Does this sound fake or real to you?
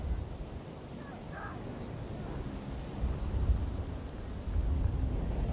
real